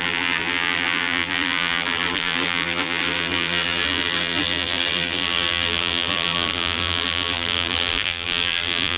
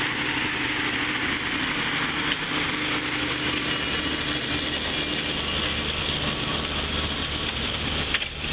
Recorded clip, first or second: second